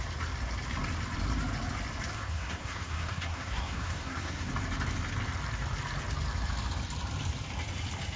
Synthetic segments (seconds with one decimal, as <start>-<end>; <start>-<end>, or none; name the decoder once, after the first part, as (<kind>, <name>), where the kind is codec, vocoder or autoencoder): 2.2-4.5 (codec, SNAC)